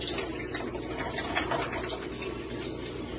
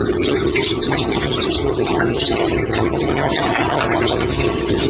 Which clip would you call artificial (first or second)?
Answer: second